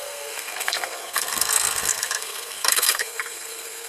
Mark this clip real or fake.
fake